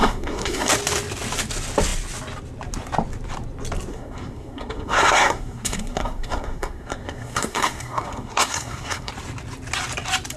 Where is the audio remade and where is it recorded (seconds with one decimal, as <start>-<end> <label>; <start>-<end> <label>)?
0.0-0.7 remade; 0.7-3.9 recorded; 3.9-9.1 remade; 9.1-10.4 recorded